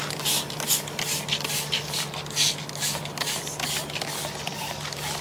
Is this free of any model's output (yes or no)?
yes